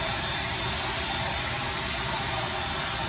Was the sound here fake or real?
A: real